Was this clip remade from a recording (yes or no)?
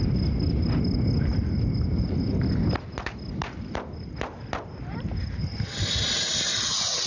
no